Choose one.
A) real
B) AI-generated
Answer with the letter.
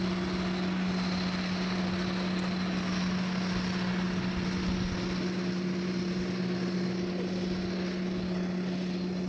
A